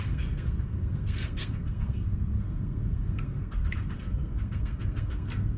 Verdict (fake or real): fake